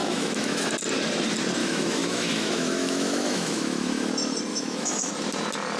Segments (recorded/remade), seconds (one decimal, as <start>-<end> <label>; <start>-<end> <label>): 0.0-0.7 remade; 0.7-1.6 recorded; 1.6-4.1 remade; 4.1-4.5 recorded; 4.5-5.1 remade; 5.1-5.8 recorded